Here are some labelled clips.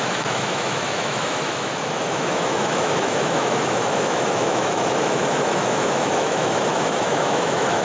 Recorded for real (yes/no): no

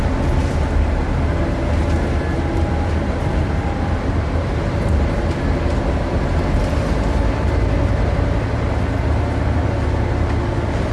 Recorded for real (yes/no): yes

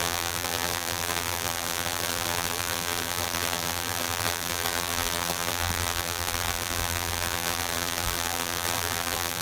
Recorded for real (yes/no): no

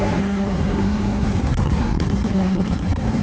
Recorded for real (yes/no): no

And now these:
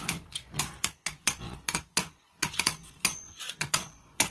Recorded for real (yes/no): no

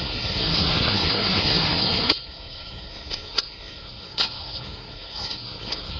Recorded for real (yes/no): no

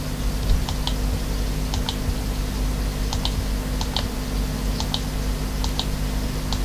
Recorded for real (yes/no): yes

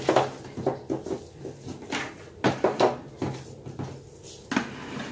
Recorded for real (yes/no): yes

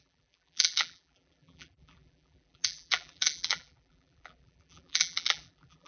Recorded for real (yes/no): no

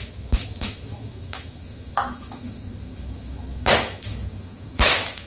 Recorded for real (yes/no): no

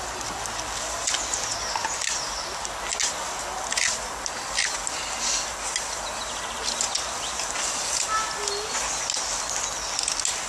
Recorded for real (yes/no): yes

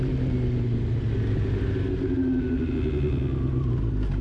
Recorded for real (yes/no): yes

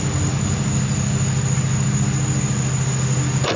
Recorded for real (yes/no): yes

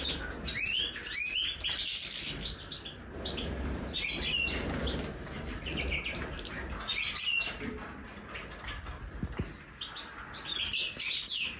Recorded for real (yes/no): yes